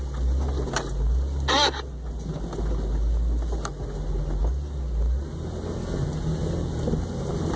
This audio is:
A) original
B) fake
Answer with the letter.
A